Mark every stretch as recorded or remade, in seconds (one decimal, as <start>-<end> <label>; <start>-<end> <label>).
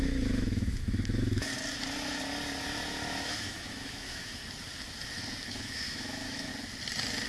0.0-1.5 remade; 1.5-2.9 recorded; 2.9-4.4 remade; 4.4-5.5 recorded; 5.5-6.5 remade; 6.5-7.3 recorded